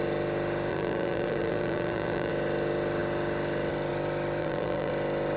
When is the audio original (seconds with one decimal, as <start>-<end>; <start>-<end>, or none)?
0.0-0.7; 2.3-4.4; 4.9-5.4